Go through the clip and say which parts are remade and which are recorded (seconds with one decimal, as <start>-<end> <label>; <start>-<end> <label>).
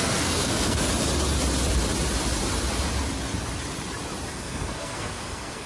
0.0-0.9 remade; 0.9-4.3 recorded; 4.3-5.7 remade